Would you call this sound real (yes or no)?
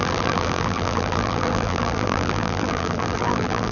no